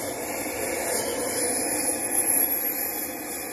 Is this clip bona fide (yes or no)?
yes